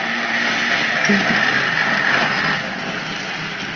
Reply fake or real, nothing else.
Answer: real